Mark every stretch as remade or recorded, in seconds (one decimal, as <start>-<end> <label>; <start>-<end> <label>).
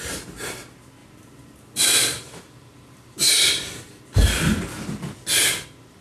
0.0-1.0 recorded; 1.0-4.0 remade; 4.0-6.0 recorded